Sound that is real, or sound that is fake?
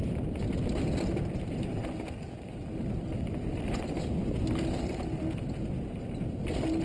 real